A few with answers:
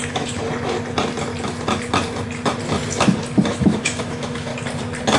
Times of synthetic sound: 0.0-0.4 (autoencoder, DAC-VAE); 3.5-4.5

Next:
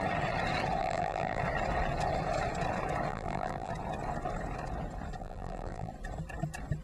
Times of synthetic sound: 0.8-1.4 (vocoder, BigVGAN v2); 3.1-3.7; 5.2-5.9

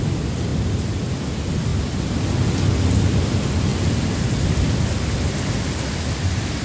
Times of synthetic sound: none

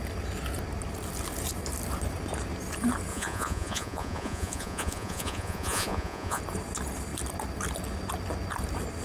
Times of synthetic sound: 3.1-6.4 (vocoder, Vocos)

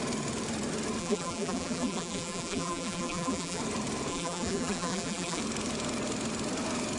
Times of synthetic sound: 1.0-3.6 (vocoder, BigVGAN v2); 4.1-5.4

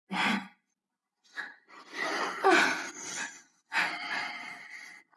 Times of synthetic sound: none

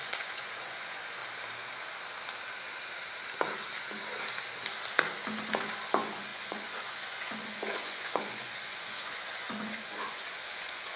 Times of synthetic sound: 0.0-1.2 (vocoder, Vocos); 5.6-11.0